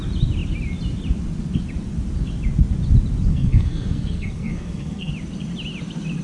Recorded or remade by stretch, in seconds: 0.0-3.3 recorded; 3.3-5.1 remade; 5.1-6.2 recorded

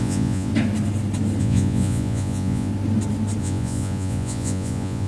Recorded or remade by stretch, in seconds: 0.0-0.5 remade; 0.5-1.4 recorded; 1.4-2.7 remade; 2.7-3.4 recorded; 3.4-5.1 remade

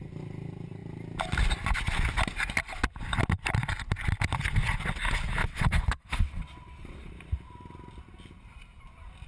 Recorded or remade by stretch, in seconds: 0.0-5.4 recorded; 5.4-7.1 remade; 7.1-9.3 recorded

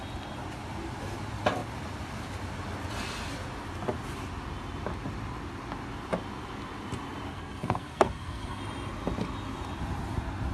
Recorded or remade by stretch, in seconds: 0.0-7.3 recorded; 7.3-8.6 remade; 8.6-10.5 recorded